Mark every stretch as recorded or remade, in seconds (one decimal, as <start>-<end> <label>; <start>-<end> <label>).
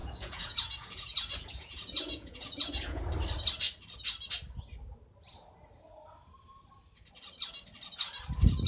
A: 0.0-3.0 remade; 3.0-8.7 recorded